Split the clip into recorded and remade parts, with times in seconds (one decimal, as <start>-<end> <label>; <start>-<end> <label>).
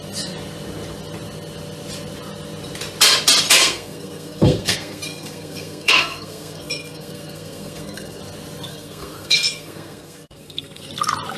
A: 0.0-3.6 recorded; 3.6-8.2 remade; 8.2-8.7 recorded; 8.7-10.9 remade; 10.9-11.4 recorded